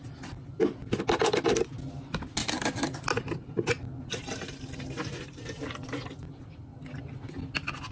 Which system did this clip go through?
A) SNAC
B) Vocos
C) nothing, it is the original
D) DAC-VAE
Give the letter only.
C